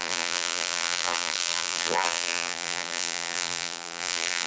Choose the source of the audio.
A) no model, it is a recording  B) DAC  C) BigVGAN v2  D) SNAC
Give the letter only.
C